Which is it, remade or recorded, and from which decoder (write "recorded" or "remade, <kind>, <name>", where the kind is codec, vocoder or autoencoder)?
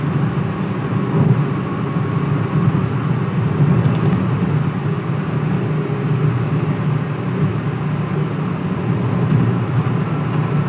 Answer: recorded